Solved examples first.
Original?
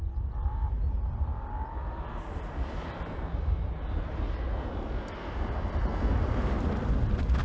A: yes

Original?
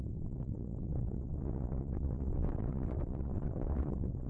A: no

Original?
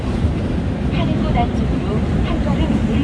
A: yes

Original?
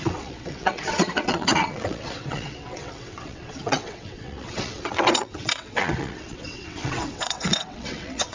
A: no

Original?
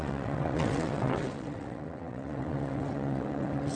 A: no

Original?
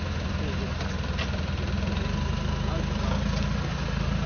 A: yes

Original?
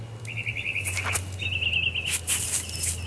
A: yes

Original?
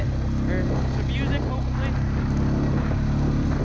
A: yes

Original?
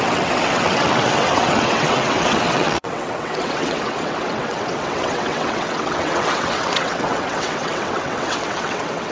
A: no